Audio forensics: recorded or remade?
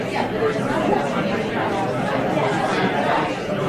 recorded